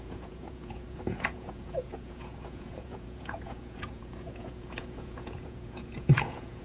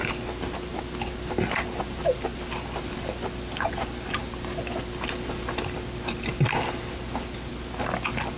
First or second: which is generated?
first